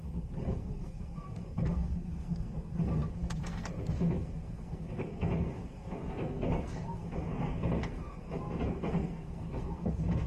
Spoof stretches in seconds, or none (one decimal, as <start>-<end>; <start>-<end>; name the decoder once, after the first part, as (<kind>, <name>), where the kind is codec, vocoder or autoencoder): 0.0-10.3 (codec, SNAC)